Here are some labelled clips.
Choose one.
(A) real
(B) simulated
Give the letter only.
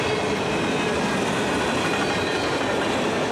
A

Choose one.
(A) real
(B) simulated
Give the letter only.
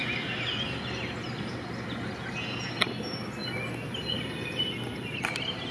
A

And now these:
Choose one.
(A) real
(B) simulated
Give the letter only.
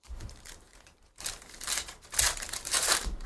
B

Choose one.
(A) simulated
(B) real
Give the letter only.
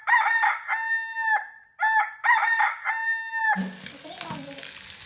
B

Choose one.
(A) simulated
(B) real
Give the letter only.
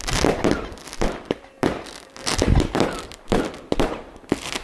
A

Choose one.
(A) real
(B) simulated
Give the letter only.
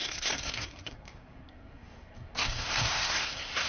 B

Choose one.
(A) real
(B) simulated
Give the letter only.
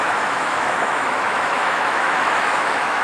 B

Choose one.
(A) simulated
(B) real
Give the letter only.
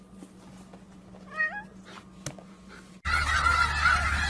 B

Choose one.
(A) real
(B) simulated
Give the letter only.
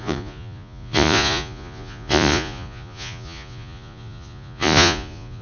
B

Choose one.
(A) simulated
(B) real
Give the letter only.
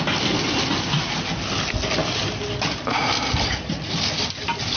B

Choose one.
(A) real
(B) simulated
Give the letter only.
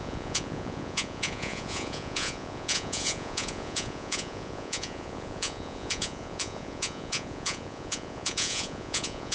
B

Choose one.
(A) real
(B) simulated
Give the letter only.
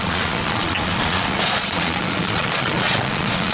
B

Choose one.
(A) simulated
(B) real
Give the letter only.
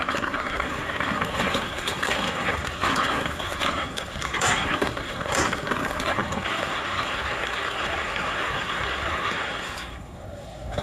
A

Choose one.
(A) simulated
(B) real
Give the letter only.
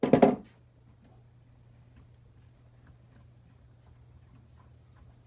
B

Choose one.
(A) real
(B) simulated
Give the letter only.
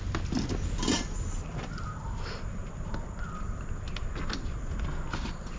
A